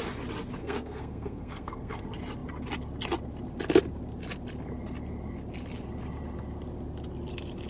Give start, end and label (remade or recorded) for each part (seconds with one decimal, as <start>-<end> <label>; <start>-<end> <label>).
0.0-0.6 recorded; 0.6-2.0 remade; 2.0-7.7 recorded